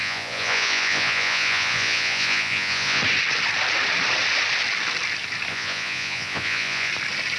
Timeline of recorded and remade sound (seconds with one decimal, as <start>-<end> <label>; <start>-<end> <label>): 0.0-3.0 remade; 3.0-5.5 recorded; 5.5-6.9 remade; 6.9-7.4 recorded